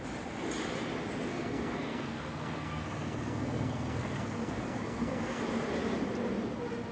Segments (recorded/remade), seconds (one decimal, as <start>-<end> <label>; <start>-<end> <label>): 0.0-1.3 recorded; 1.3-5.4 remade; 5.4-6.9 recorded